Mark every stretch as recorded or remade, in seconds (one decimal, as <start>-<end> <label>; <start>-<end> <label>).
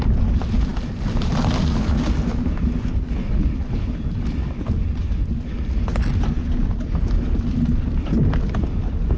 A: 0.0-9.2 recorded